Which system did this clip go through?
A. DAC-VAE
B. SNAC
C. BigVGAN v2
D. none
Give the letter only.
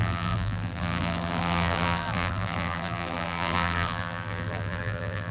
C